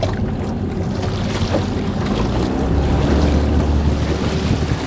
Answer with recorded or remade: recorded